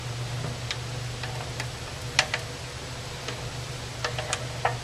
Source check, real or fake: real